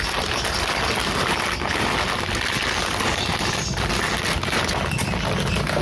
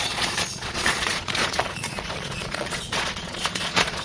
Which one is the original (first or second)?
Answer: first